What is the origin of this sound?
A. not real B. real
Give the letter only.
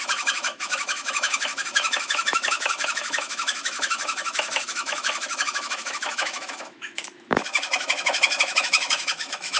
A